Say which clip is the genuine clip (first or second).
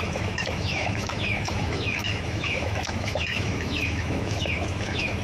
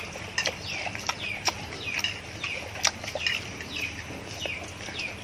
second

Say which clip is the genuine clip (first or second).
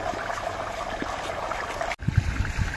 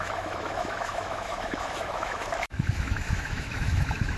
first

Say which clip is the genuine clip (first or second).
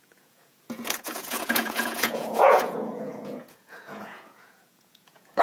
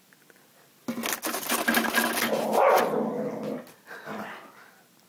second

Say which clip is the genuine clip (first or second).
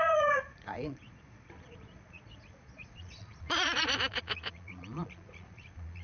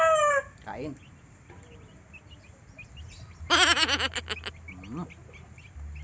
second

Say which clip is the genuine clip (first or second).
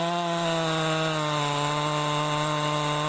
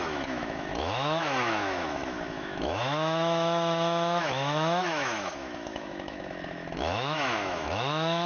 first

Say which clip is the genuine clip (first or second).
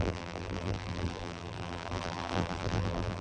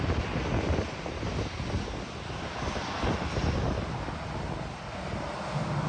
second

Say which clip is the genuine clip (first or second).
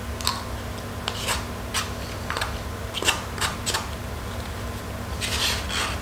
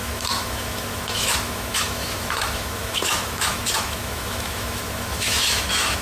first